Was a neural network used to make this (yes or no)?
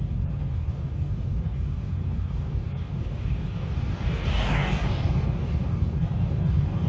yes